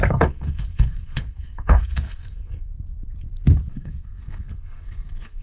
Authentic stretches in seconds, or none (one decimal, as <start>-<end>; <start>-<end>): 2.7-3.7